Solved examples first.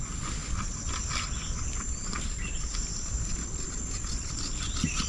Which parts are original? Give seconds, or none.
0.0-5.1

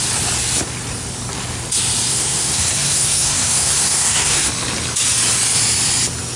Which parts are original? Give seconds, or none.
0.0-2.1; 4.5-6.4